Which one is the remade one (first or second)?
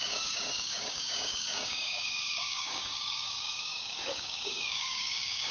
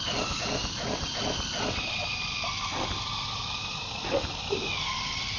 first